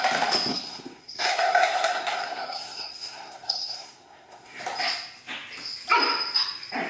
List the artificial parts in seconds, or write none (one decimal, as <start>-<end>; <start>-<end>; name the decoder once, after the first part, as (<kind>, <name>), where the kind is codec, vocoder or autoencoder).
0.5-4.6 (codec, SNAC)